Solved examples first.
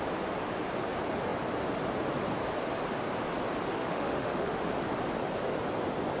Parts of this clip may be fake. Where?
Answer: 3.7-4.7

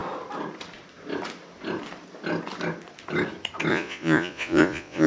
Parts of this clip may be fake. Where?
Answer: 3.7-5.1

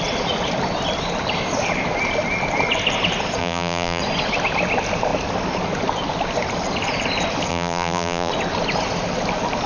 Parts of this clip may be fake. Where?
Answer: 3.4-4.0; 7.5-8.3

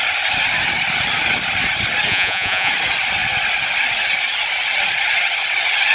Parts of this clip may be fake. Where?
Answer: 2.1-2.7

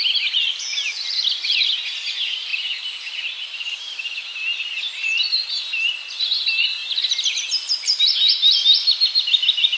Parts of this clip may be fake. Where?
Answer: none

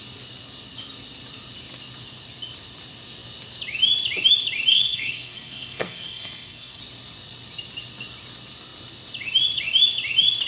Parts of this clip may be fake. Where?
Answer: 4.7-6.8

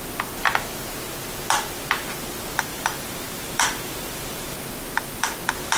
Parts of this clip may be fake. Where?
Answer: 2.7-4.7